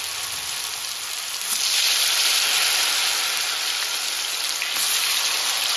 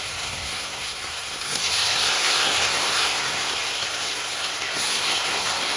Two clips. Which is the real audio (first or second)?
first